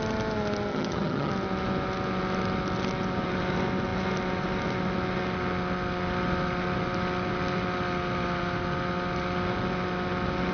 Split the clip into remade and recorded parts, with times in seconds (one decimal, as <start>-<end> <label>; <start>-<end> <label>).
0.0-0.7 recorded; 0.7-1.3 remade; 1.3-10.5 recorded